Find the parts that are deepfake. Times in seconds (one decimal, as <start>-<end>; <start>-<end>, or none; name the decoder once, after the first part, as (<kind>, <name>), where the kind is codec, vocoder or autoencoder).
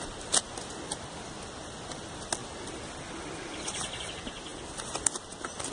none